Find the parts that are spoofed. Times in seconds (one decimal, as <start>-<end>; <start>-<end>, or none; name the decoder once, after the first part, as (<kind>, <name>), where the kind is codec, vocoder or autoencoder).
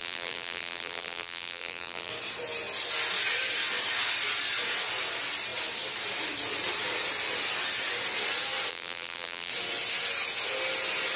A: 0.0-2.1 (vocoder, BigVGAN v2); 8.7-9.5